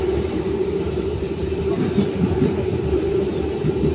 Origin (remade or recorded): remade